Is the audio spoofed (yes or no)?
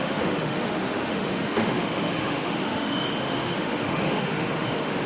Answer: yes